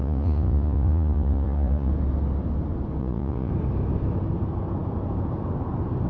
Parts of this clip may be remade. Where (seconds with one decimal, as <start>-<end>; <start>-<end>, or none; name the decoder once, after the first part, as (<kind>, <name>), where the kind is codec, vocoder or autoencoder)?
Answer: 0.0-1.9 (vocoder, Vocos); 3.0-3.5